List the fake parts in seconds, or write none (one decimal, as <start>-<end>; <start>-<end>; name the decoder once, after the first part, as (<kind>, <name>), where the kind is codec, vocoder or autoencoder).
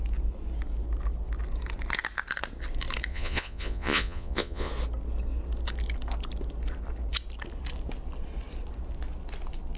3.1-4.7 (vocoder, Vocos)